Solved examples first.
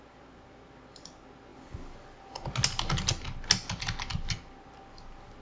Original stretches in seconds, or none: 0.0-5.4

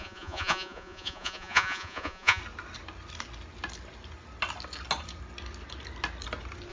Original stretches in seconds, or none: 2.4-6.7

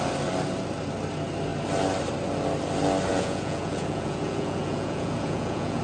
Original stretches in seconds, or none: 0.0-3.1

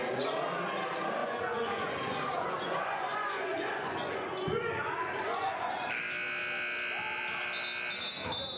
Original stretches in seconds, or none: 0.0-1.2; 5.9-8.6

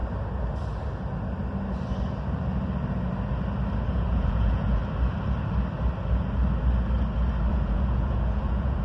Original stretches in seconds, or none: 0.0-3.9; 4.8-7.5

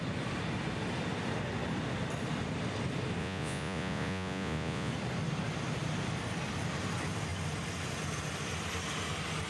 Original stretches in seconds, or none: 0.0-3.2; 4.9-9.5

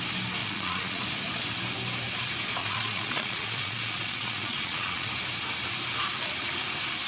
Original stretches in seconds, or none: 0.0-0.4; 1.0-2.6; 5.1-7.1

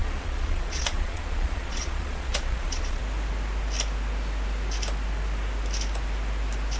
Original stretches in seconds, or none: 3.0-6.8